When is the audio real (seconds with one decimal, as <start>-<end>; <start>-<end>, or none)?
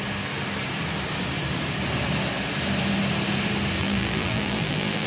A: 0.0-3.8